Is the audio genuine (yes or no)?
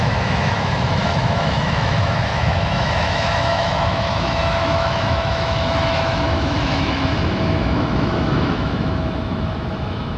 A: no